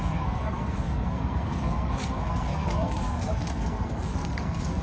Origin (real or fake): fake